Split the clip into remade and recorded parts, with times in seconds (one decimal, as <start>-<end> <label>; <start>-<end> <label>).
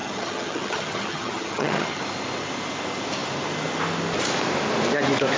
0.0-2.0 remade; 2.0-5.4 recorded